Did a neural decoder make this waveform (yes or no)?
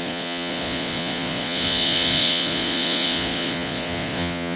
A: yes